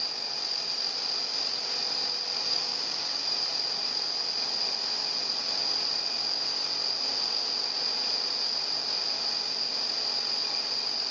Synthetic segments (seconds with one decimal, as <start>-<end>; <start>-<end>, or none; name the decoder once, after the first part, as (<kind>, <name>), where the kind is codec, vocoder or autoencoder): 2.5-3.2 (codec, DAC)